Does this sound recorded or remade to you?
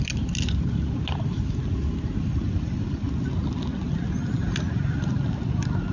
recorded